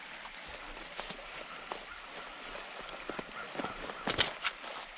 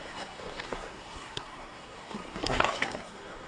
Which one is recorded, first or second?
first